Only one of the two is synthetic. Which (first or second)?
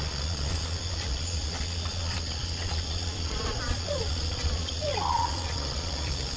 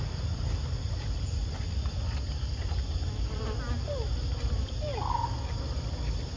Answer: first